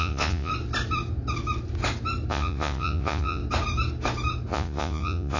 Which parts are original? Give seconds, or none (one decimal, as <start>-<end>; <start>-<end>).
0.5-2.3; 3.4-4.5